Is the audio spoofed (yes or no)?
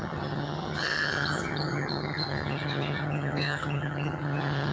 yes